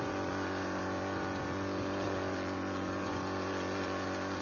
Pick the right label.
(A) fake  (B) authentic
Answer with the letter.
A